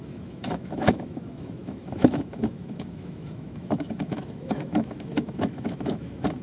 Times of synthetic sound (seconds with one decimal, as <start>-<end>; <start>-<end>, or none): 0.0-6.4